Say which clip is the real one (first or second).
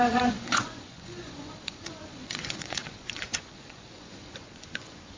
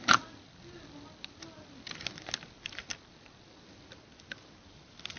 second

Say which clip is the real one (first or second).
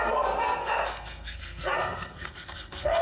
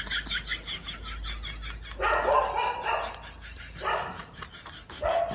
second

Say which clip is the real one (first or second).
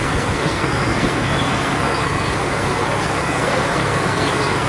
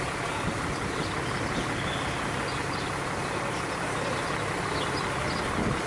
second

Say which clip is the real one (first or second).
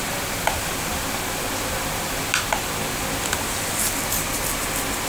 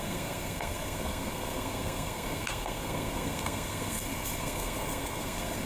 first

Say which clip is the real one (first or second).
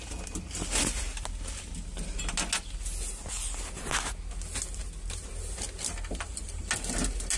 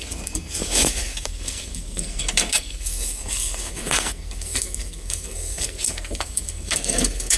first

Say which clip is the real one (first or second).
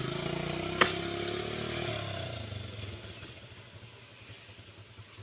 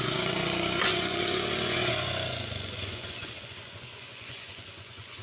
first